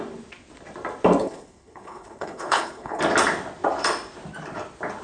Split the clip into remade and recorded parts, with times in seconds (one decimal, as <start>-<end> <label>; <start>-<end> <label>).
0.0-1.2 recorded; 1.2-3.0 remade; 3.0-5.0 recorded

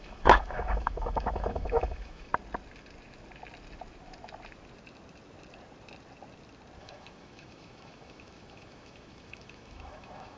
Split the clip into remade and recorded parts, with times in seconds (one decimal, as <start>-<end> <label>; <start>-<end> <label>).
0.0-2.3 remade; 2.3-6.8 recorded; 6.8-10.4 remade